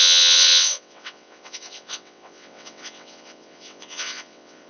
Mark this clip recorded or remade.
remade